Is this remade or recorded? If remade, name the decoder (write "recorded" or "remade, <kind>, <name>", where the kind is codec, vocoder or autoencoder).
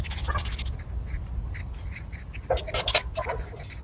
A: recorded